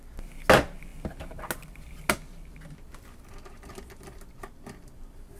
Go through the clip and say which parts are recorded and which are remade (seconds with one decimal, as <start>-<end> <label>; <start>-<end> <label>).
0.0-5.4 recorded